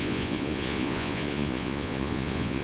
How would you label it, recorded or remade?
remade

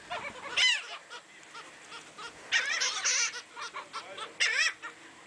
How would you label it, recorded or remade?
recorded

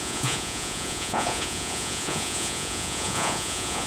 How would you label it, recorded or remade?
remade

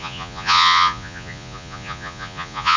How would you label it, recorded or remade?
remade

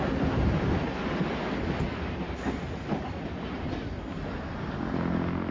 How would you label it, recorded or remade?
recorded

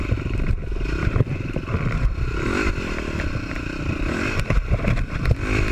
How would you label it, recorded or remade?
recorded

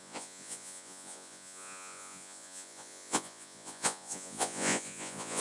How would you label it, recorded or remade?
remade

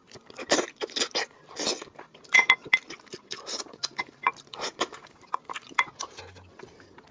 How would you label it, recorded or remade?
recorded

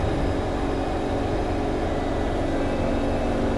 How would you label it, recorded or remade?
recorded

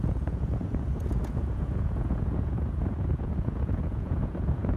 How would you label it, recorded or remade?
remade